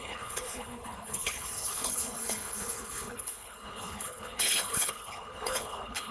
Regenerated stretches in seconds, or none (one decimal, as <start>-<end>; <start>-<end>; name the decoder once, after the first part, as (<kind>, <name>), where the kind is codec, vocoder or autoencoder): 0.0-6.1 (codec, HILCodec)